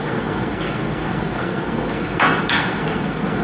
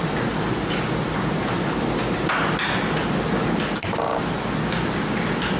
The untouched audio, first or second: second